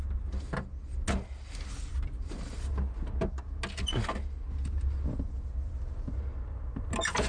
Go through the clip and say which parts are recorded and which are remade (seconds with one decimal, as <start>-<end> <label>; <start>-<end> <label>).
0.0-7.3 recorded